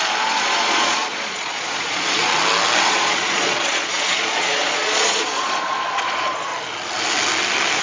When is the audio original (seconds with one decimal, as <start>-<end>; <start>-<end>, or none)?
2.3-2.8; 6.5-7.8